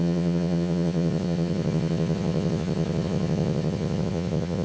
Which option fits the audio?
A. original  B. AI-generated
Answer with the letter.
B